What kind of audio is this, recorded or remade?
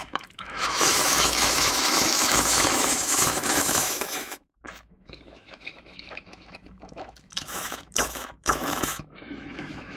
remade